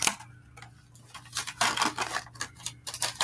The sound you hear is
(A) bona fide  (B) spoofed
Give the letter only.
A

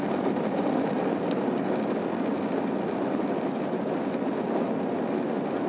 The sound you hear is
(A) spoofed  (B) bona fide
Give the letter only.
B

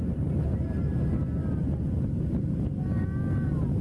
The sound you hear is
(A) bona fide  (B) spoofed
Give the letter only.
A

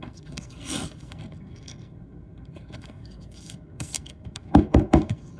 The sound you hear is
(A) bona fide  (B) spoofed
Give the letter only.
B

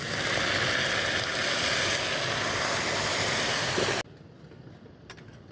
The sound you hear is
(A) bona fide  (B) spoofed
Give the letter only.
A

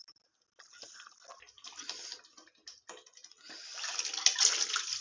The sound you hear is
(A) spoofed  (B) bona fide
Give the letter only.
B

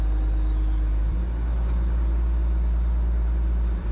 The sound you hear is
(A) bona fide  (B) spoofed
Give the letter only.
B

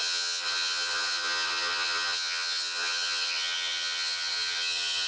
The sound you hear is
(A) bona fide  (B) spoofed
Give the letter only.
B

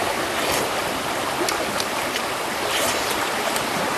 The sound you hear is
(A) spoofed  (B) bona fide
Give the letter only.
B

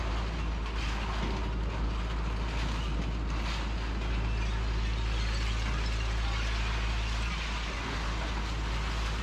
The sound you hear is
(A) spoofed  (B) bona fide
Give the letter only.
B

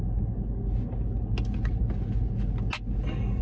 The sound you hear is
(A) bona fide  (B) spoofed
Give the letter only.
A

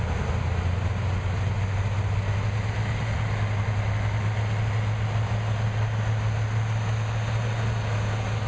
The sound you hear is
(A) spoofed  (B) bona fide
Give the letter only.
B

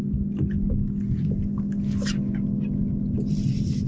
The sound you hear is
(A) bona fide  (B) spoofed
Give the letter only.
A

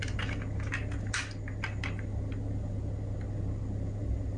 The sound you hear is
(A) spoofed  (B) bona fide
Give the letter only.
B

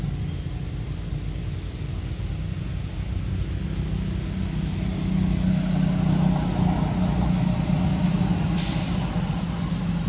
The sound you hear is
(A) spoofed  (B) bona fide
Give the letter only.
B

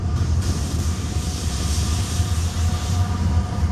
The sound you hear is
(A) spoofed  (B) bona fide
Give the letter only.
A